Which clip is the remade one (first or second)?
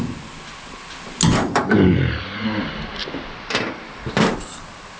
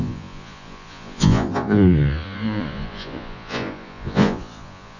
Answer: second